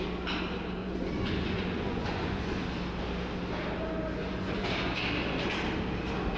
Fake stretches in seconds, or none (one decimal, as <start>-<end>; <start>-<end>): 0.8-2.6; 4.2-5.0